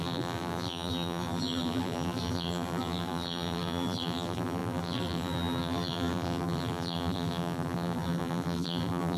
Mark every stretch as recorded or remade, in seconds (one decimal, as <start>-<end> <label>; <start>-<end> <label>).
0.0-9.2 remade